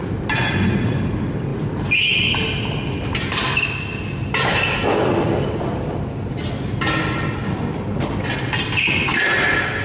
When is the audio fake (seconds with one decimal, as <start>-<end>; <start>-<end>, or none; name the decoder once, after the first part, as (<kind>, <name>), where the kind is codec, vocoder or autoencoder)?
none